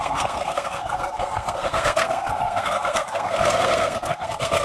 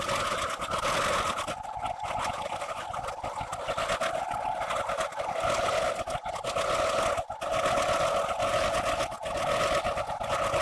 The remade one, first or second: first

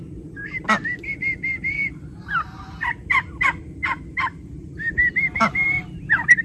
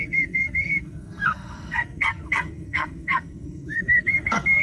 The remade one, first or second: second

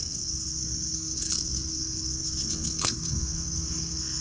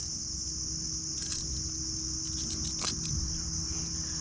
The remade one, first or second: first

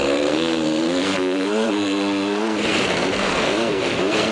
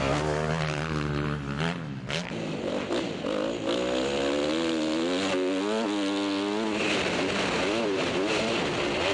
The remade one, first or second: first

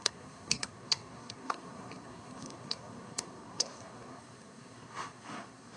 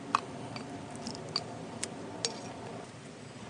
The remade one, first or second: first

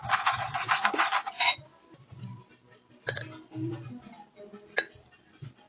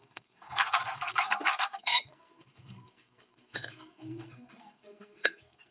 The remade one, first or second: second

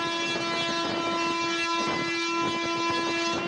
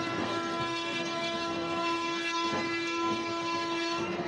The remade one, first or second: second